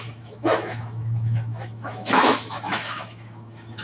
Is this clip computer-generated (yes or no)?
yes